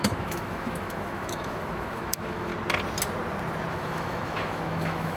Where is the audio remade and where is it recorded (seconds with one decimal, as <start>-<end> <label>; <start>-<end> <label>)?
0.0-2.5 remade; 2.5-3.7 recorded; 3.7-5.2 remade